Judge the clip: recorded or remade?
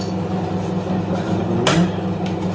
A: recorded